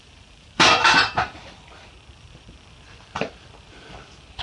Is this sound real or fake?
fake